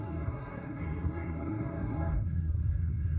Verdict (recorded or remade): remade